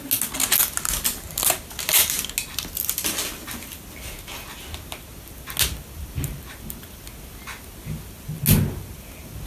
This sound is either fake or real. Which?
real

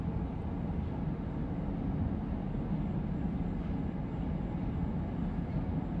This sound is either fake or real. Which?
real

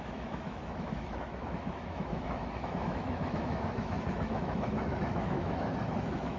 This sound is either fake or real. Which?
fake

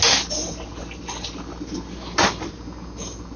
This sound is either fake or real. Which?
real